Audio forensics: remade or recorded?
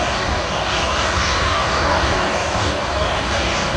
remade